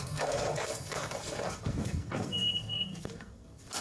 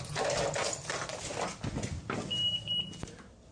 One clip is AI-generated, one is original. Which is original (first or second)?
second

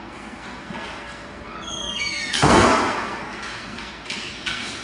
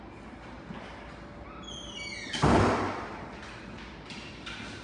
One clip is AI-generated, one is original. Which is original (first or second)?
second